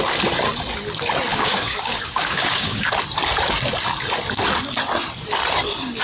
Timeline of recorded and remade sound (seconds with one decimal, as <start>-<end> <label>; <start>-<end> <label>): 0.0-1.3 recorded; 1.3-2.9 remade; 2.9-6.0 recorded